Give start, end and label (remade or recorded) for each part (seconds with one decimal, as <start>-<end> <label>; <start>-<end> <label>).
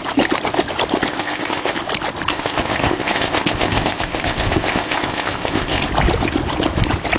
0.0-1.1 recorded; 1.1-1.7 remade; 1.7-2.3 recorded; 2.3-5.8 remade; 5.8-7.2 recorded